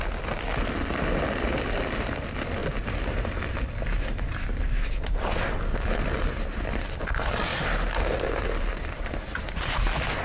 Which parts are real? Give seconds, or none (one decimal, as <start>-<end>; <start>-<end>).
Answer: 2.6-3.3; 7.5-8.0